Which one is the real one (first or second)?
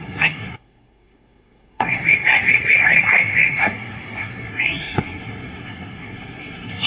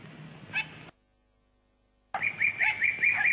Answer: second